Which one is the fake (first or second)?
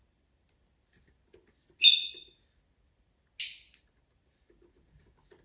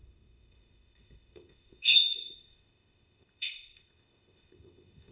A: second